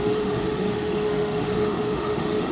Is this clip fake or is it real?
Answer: fake